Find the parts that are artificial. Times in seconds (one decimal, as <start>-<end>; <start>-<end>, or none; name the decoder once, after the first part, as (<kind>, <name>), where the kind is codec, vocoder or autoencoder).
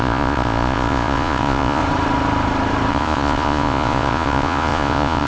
0.0-1.8 (vocoder, Vocos); 2.9-5.3